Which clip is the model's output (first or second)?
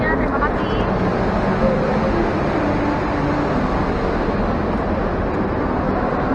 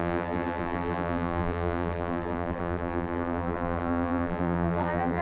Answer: second